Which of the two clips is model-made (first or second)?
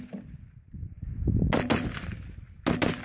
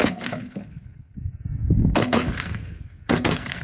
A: second